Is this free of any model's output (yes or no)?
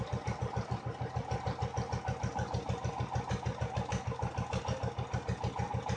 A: yes